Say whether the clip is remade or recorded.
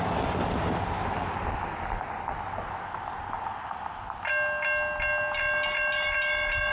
recorded